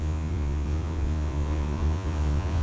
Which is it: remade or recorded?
remade